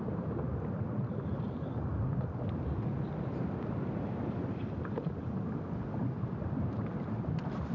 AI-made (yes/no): no